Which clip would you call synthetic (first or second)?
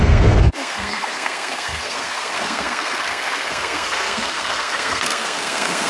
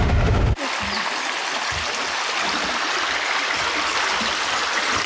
first